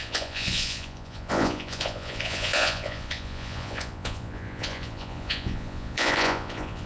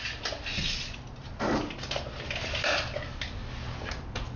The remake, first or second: first